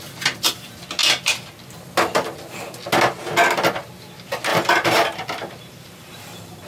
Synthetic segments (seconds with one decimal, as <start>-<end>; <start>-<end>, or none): 4.5-6.7